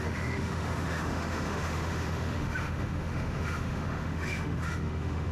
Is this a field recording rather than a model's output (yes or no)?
no